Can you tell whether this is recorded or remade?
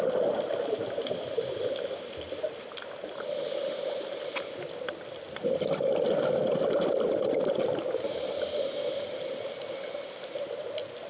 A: recorded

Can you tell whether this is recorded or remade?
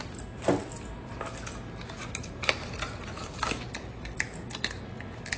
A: recorded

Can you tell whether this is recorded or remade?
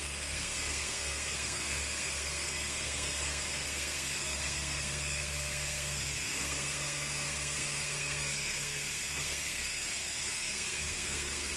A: remade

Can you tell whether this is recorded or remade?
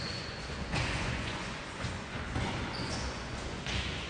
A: remade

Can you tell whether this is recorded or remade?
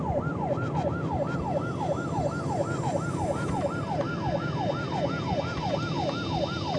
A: recorded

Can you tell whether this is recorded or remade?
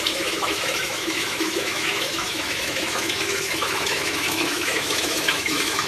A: remade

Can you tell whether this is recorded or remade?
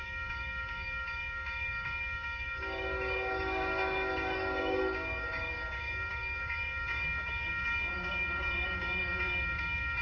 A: remade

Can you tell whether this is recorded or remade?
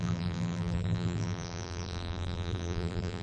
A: remade